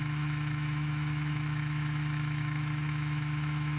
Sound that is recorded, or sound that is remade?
remade